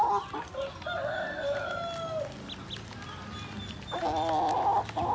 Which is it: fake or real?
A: real